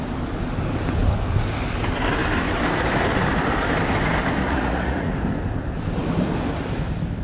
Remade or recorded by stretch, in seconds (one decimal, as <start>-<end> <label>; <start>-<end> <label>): 0.0-4.4 recorded; 4.4-5.1 remade; 5.1-7.2 recorded